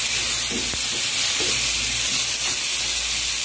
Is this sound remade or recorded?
recorded